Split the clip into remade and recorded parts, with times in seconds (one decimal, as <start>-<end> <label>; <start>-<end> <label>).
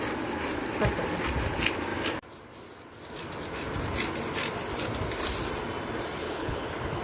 0.0-6.2 recorded; 6.2-7.0 remade